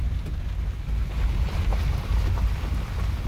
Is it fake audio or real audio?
real